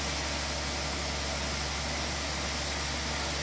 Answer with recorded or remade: recorded